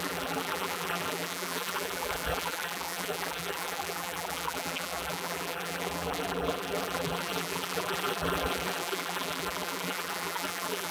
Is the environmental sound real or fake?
fake